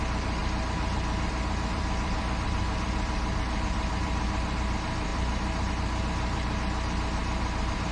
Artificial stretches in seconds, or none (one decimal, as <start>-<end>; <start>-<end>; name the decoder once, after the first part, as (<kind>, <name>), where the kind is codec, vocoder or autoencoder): 0.0-0.4 (vocoder, BigVGAN v2); 1.3-7.2